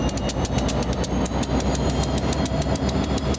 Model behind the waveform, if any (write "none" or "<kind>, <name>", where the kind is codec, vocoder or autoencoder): none